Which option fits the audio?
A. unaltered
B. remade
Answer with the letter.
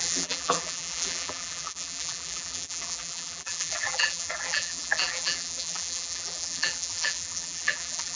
B